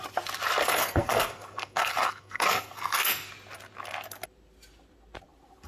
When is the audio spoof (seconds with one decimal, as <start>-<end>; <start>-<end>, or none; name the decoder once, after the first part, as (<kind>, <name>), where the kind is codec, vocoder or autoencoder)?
0.6-3.3 (codec, SNAC)